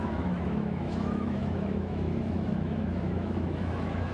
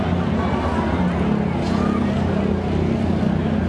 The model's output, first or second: first